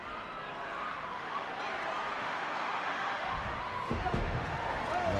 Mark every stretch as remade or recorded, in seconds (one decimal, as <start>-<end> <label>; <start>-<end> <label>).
0.0-0.9 recorded; 0.9-1.6 remade; 1.6-2.2 recorded; 2.2-4.8 remade; 4.8-5.2 recorded